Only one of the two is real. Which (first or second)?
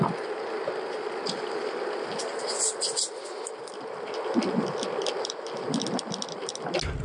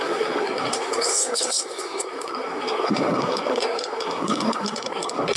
first